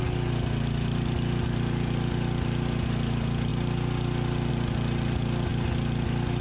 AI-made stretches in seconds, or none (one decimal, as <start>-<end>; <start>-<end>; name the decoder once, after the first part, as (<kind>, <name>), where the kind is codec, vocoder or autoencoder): none